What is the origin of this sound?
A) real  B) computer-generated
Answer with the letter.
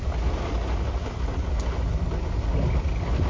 A